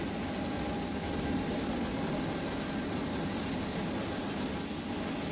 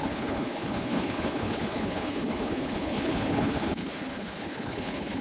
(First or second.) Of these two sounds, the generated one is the second